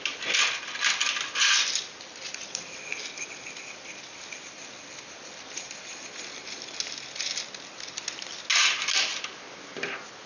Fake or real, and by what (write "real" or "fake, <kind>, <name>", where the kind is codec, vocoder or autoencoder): real